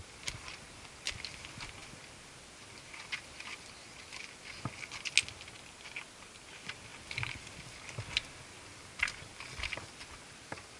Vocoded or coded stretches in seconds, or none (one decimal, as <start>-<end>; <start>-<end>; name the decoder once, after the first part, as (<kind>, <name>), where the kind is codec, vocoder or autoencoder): none